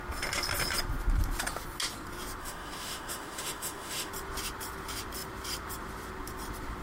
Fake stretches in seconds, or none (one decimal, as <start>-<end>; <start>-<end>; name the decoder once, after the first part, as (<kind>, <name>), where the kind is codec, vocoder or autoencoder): 2.4-4.1 (autoencoder, DAC-VAE)